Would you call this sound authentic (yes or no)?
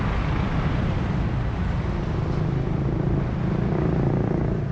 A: yes